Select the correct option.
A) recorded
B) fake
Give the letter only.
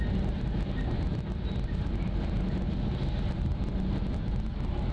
A